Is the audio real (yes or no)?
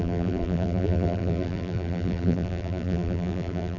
no